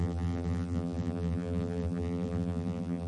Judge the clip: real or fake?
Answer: fake